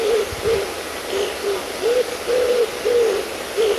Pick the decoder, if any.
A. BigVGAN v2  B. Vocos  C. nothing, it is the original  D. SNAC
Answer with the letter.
C